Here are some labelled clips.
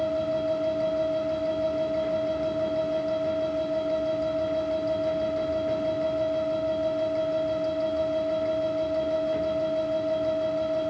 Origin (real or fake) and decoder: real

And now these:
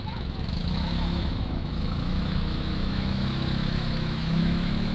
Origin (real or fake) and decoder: fake, autoencoder, DAC-VAE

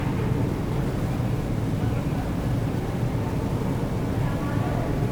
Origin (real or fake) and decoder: real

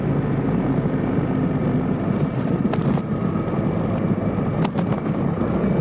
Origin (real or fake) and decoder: real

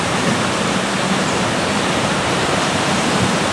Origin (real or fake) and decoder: fake, vocoder, BigVGAN v2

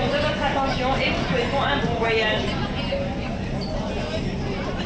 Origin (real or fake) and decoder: real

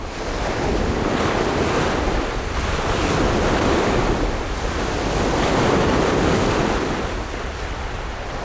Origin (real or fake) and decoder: real